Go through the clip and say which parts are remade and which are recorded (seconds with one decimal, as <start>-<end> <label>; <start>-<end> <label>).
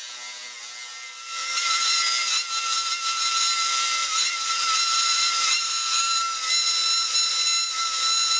0.0-1.4 recorded; 1.4-2.0 remade; 2.0-4.0 recorded; 4.0-5.7 remade; 5.7-8.4 recorded